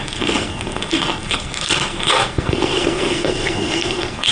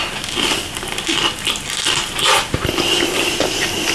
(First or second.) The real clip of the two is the second